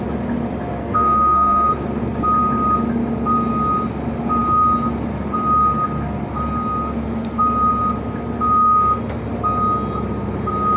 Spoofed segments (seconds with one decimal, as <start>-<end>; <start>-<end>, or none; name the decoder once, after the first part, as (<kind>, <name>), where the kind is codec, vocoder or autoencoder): 0.8-1.7 (codec, SNAC)